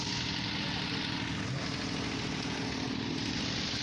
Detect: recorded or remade recorded